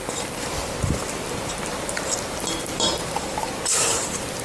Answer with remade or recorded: remade